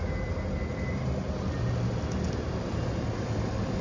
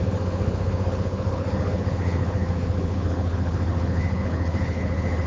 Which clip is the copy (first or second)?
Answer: second